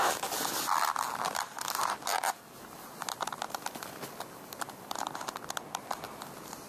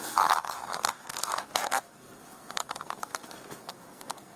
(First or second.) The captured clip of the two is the first